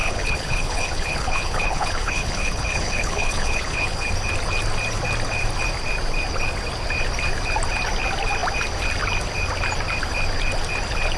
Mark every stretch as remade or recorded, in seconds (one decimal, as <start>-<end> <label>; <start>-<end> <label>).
0.0-4.1 remade; 4.1-11.2 recorded

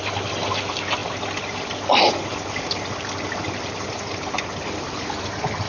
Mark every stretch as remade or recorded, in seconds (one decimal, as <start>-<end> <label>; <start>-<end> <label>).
0.0-5.7 recorded

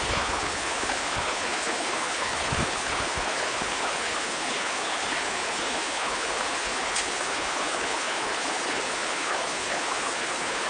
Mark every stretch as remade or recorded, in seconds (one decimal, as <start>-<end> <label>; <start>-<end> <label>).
0.0-10.7 remade

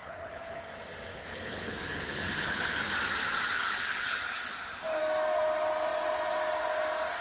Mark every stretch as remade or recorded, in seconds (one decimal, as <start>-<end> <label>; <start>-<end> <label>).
0.0-0.7 remade; 0.7-1.1 recorded; 1.1-2.8 remade; 2.8-3.5 recorded; 3.5-5.0 remade; 5.0-7.2 recorded